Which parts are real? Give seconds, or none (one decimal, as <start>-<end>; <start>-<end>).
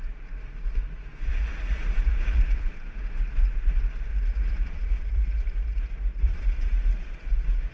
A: 0.0-1.3; 2.6-4.1; 6.9-7.7